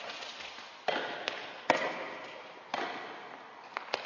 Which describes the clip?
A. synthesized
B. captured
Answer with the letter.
B